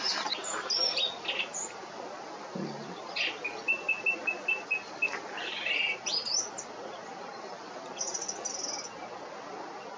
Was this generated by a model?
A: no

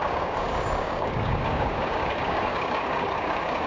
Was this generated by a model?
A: yes